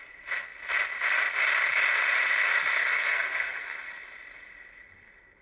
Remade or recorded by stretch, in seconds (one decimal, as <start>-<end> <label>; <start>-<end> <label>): 0.0-2.8 recorded; 2.8-3.9 remade; 3.9-5.4 recorded